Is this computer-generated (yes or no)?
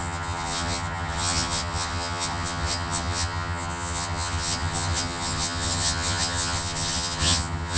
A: yes